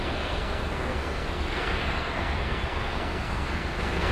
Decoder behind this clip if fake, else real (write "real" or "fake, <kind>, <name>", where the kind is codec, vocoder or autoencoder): fake, codec, SNAC